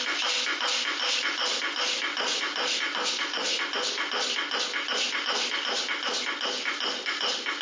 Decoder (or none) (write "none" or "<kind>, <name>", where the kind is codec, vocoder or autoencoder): none